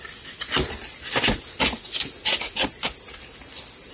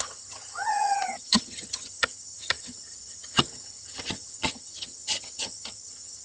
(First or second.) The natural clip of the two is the first